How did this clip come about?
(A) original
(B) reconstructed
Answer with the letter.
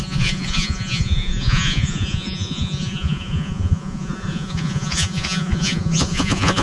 B